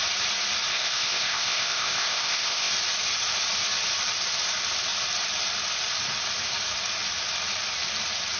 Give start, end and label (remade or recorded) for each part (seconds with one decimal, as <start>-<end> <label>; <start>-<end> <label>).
0.0-0.7 recorded; 0.7-2.7 remade; 2.7-8.4 recorded

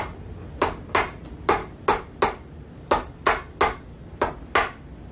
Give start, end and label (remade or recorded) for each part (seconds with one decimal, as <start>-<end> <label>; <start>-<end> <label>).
0.0-5.1 recorded

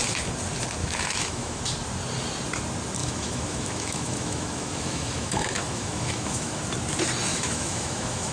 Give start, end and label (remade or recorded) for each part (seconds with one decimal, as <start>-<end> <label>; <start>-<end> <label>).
0.0-0.8 recorded; 0.8-1.6 remade; 1.6-3.0 recorded; 3.0-6.6 remade; 6.6-7.3 recorded; 7.3-8.3 remade

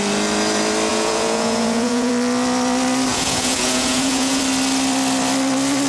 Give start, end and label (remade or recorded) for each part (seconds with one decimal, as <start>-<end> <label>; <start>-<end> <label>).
0.0-0.9 recorded; 0.9-2.1 remade; 2.1-3.1 recorded; 3.1-4.4 remade; 4.4-5.9 recorded

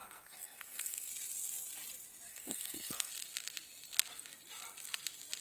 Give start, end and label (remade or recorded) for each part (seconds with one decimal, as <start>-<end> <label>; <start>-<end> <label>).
0.0-1.1 remade; 1.1-2.3 recorded; 2.3-3.1 remade; 3.1-5.4 recorded

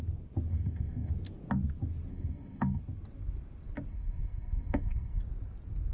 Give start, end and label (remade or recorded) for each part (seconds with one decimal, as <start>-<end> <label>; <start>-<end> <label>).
0.0-0.5 recorded; 0.5-1.1 remade; 1.1-2.1 recorded; 2.1-2.8 remade; 2.8-3.9 recorded; 3.9-5.2 remade; 5.2-5.9 recorded

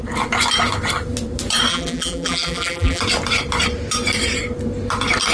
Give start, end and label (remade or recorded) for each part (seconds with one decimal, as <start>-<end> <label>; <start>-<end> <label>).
0.0-1.7 recorded; 1.7-3.0 remade; 3.0-5.3 recorded